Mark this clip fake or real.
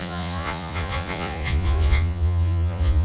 fake